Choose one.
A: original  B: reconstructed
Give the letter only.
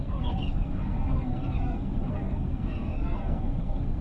B